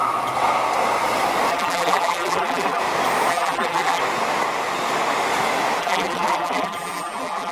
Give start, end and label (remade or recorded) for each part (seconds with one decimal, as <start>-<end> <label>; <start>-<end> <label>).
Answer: 0.0-1.5 recorded; 1.5-2.8 remade; 2.8-3.3 recorded; 3.3-4.0 remade; 4.0-5.8 recorded; 5.8-7.5 remade